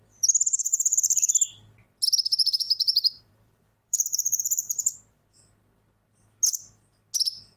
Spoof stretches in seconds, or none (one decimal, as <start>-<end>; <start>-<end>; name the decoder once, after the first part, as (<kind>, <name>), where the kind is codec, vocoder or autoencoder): 0.5-1.3 (vocoder, BigVGAN v2); 2.4-5.4